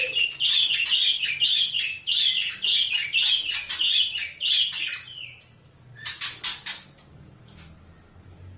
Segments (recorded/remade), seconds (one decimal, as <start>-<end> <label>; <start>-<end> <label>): 0.0-1.5 recorded; 1.5-2.3 remade; 2.3-8.6 recorded